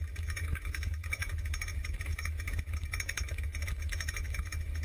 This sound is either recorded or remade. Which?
remade